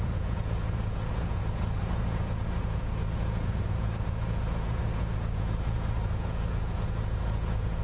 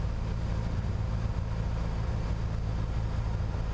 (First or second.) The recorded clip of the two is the second